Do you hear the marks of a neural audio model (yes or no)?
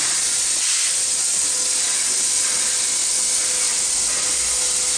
no